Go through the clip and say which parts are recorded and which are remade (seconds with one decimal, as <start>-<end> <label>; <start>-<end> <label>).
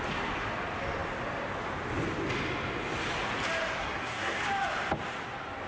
0.0-3.8 recorded; 3.8-4.4 remade; 4.4-5.7 recorded